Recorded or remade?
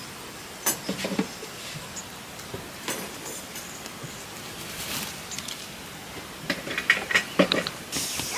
recorded